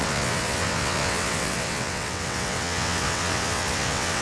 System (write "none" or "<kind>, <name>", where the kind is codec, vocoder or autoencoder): vocoder, WaveNeXt